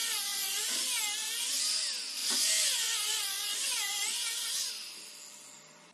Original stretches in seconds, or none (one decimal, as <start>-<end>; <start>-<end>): 0.8-2.2; 4.7-5.9